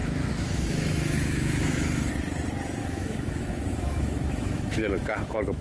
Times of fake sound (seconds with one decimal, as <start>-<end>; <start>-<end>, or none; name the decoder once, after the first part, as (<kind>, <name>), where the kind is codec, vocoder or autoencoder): 0.0-2.1 (autoencoder, DAC-VAE); 2.8-5.6